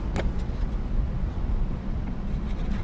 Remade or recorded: remade